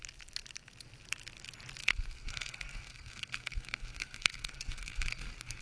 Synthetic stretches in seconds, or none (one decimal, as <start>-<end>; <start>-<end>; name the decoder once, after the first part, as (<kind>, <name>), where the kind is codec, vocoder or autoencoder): 1.8-5.6 (codec, SNAC)